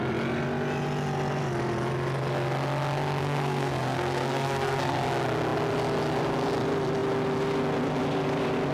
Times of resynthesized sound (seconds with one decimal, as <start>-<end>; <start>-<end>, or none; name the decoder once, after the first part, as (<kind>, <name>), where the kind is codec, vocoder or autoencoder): 3.2-5.0 (codec, SNAC)